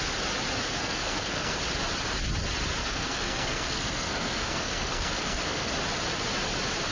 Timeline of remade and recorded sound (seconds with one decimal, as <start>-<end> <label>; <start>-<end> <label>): 0.0-0.8 recorded; 0.8-1.6 remade; 1.6-2.8 recorded; 2.8-5.7 remade; 5.7-6.9 recorded

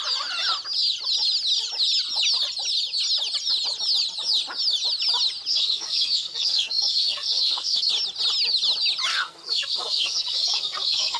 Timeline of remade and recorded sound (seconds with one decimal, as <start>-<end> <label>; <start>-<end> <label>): 0.0-5.5 recorded; 5.5-7.9 remade; 7.9-9.1 recorded; 9.1-11.2 remade

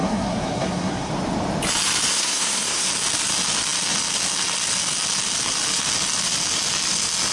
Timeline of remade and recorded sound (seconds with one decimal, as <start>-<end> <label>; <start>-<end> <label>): 0.0-1.1 remade; 1.1-2.1 recorded; 2.1-2.9 remade; 2.9-7.3 recorded

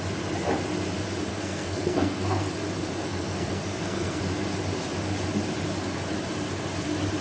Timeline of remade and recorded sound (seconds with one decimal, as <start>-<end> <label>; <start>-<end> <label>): 0.0-1.3 recorded; 1.3-2.5 remade; 2.5-3.0 recorded; 3.0-4.2 remade; 4.2-7.2 recorded

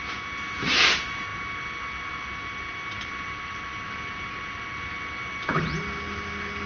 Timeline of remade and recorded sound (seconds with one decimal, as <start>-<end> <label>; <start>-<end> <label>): 0.0-6.7 recorded

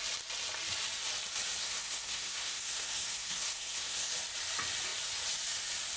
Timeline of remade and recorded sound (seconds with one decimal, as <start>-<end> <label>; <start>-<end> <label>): 0.0-1.6 recorded; 1.6-4.1 remade; 4.1-6.0 recorded